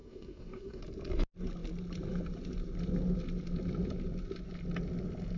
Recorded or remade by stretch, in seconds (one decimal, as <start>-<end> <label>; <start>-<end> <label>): 0.0-0.8 remade; 0.8-5.4 recorded